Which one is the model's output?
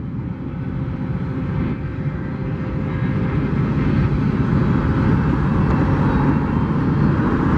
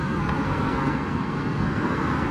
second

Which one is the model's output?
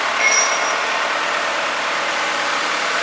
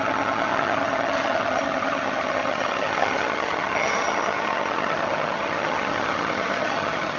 second